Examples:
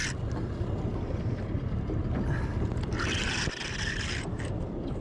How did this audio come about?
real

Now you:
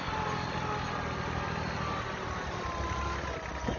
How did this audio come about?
real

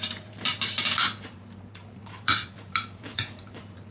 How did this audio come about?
fake